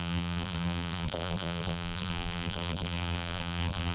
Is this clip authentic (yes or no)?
no